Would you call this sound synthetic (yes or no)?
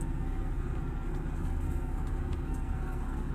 yes